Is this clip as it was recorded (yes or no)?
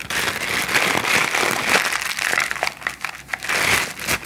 yes